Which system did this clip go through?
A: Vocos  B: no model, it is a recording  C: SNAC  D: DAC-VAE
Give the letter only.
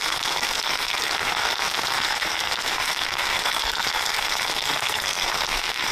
C